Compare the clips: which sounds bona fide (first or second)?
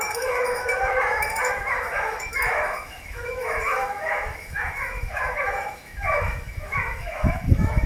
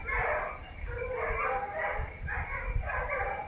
second